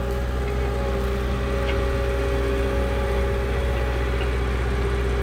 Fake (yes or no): no